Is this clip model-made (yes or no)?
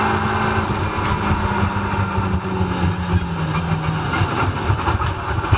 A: no